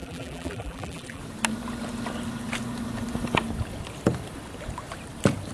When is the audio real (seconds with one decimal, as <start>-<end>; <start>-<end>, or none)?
1.2-5.5